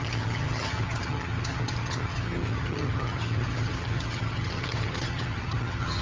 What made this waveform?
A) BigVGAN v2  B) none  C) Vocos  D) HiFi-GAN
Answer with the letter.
D